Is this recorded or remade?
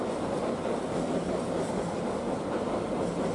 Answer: recorded